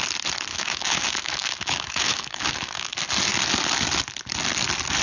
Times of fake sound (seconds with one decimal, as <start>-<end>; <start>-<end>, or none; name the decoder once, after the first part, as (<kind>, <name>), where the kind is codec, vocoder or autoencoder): 0.5-2.9 (autoencoder, DAC-VAE)